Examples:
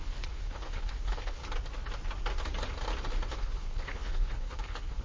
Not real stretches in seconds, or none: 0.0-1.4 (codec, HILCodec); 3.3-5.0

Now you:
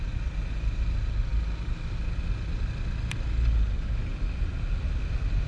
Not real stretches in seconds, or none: none

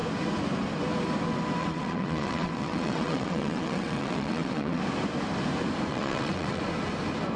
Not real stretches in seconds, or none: 1.6-4.8 (vocoder, WaveNeXt); 5.9-6.6